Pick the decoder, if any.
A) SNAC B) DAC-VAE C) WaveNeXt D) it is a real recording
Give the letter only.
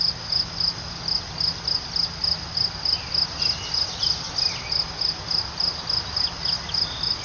D